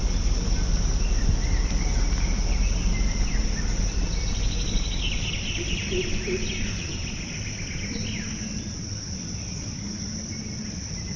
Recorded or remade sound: recorded